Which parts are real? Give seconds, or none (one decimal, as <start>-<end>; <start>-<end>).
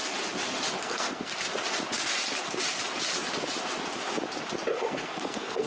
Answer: 0.0-0.8; 1.3-4.7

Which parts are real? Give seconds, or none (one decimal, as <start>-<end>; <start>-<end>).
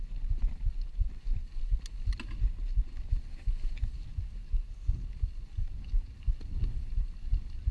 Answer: 0.0-7.7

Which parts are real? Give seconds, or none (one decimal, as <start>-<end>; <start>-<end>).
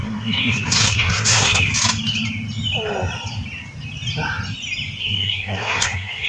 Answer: 1.7-5.0